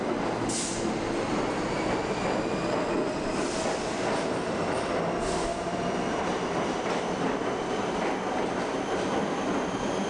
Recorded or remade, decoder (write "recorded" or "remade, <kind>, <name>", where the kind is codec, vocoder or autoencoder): recorded